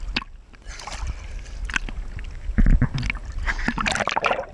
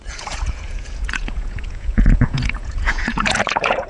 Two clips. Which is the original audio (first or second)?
first